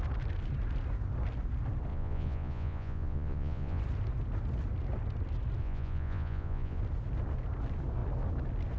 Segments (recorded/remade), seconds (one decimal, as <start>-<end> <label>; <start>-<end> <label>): 0.0-1.9 recorded; 1.9-3.8 remade; 3.8-5.6 recorded; 5.6-6.8 remade; 6.8-8.8 recorded

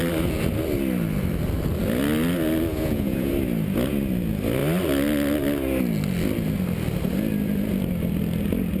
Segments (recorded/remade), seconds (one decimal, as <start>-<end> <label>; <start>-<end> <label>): 0.0-2.7 recorded; 2.7-3.3 remade; 3.3-8.8 recorded

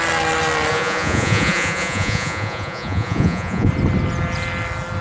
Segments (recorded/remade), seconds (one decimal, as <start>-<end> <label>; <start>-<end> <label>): 0.0-0.7 recorded; 0.7-3.7 remade; 3.7-5.0 recorded

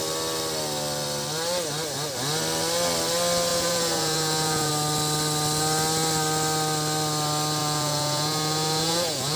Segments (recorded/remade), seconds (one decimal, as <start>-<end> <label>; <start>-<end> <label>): 0.0-3.5 recorded; 3.5-4.7 remade; 4.7-7.6 recorded; 7.6-9.4 remade

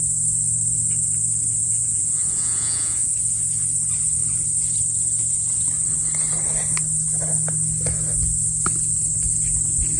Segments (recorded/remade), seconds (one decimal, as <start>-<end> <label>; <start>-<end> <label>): 0.0-1.6 recorded; 1.6-3.1 remade; 3.1-10.0 recorded

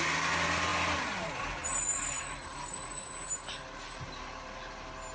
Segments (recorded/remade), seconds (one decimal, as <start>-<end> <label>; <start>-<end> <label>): 0.0-5.1 recorded

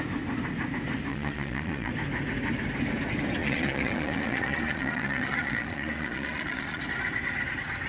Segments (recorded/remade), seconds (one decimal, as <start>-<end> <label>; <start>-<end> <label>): 0.0-1.1 recorded; 1.1-1.9 remade; 1.9-3.4 recorded; 3.4-6.8 remade; 6.8-7.9 recorded

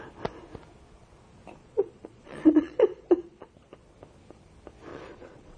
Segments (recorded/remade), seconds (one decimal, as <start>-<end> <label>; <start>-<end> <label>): 0.0-1.6 recorded; 1.6-3.5 remade; 3.5-4.9 recorded; 4.9-5.6 remade